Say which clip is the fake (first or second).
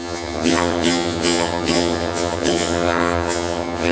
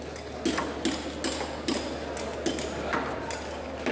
first